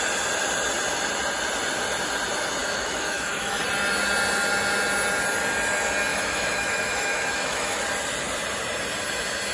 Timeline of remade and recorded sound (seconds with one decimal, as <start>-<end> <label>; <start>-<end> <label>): 0.0-2.6 recorded; 2.6-3.6 remade; 3.6-6.1 recorded; 6.1-7.8 remade; 7.8-9.5 recorded